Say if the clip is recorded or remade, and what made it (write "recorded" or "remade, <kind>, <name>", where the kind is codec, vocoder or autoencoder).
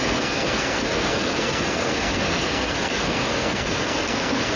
remade, codec, SNAC